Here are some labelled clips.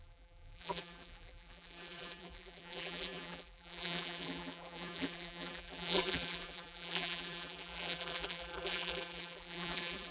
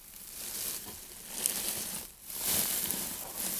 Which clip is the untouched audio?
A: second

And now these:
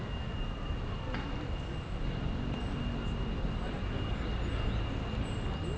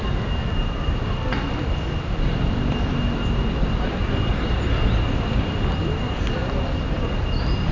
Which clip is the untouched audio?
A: first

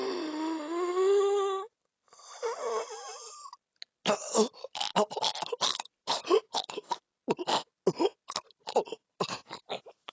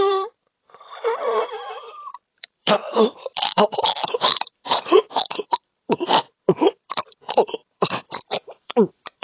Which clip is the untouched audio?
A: first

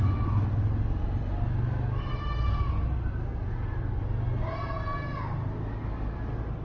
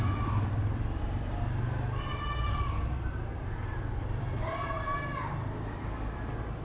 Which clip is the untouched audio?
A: first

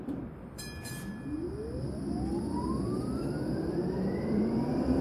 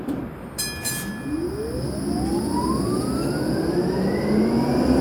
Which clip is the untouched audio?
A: second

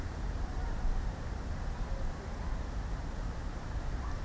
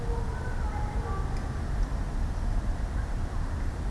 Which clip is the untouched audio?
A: second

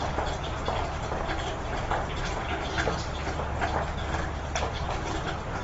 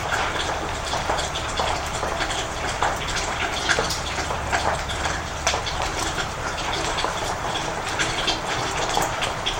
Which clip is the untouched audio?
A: first